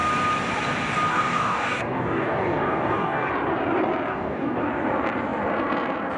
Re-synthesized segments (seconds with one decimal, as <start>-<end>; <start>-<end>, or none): 1.1-3.3; 4.1-4.6